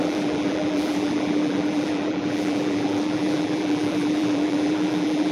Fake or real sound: fake